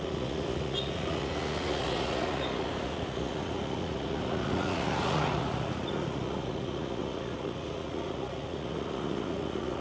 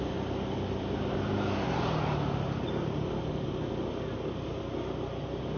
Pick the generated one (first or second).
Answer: first